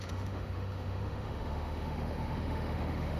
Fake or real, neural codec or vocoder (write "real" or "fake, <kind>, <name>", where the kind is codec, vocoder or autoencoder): fake, autoencoder, DAC-VAE